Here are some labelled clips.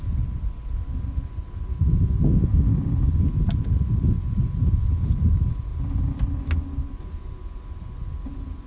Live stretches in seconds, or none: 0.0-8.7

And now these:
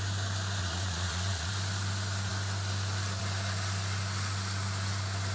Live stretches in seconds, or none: 0.0-0.6; 1.5-5.3

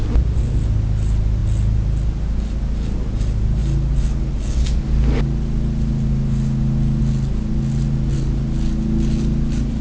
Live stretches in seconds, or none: 0.0-9.8